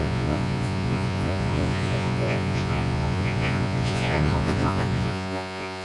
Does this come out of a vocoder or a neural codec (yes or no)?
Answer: yes